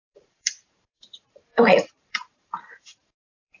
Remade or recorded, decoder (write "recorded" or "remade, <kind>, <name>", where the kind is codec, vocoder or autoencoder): remade, vocoder, BigVGAN v2